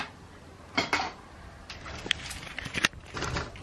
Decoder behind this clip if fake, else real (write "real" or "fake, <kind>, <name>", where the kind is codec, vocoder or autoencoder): real